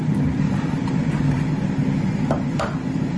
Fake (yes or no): yes